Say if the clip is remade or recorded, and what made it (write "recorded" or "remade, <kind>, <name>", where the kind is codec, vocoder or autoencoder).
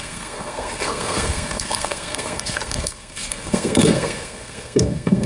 remade, codec, SNAC